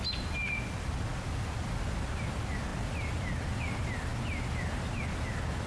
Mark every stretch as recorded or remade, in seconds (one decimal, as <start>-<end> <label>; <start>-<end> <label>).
0.0-5.7 recorded